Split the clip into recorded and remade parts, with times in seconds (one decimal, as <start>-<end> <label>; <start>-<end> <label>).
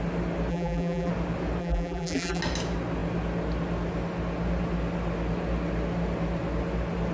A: 0.0-0.5 recorded; 0.5-1.1 remade; 1.1-1.6 recorded; 1.6-2.4 remade; 2.4-7.1 recorded